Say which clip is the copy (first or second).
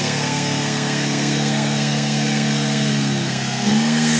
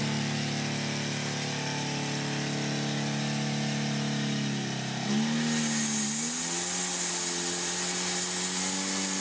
first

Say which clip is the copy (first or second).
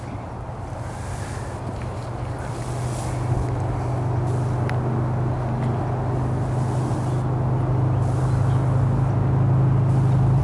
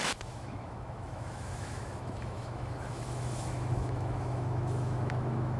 second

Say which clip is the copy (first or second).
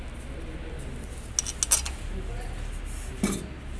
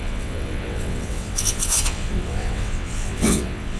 second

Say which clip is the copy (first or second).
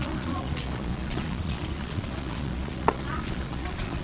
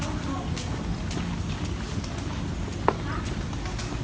first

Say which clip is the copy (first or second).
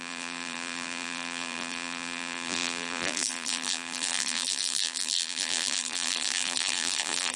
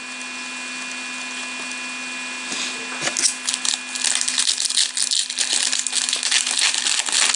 first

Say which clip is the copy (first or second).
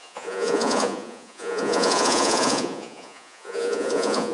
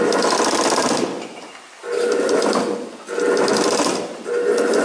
first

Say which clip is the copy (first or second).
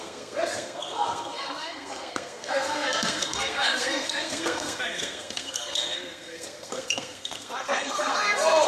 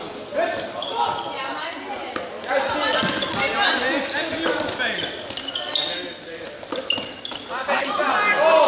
first